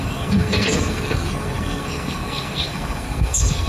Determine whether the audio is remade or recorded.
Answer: remade